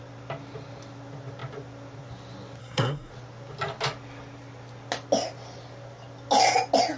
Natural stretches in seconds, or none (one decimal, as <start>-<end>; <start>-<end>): 0.0-2.6; 3.1-7.0

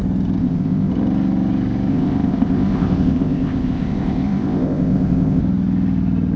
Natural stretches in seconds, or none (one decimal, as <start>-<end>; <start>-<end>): 0.0-0.4; 0.9-1.9; 5.4-6.4